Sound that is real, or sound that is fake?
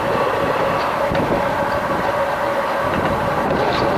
real